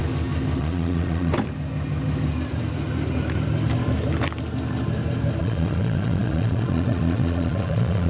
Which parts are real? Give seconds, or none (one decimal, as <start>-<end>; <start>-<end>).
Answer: 0.0-0.6; 1.3-5.4